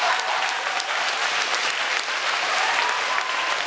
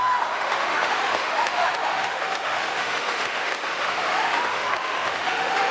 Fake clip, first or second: second